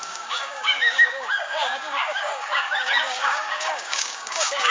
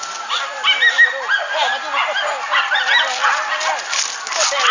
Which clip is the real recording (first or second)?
second